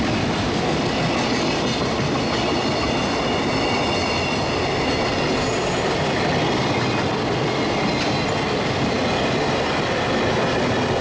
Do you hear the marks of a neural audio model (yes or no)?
no